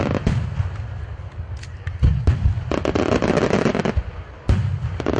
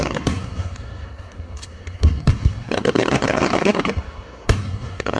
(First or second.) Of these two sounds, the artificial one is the second